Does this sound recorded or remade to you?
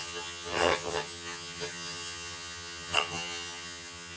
remade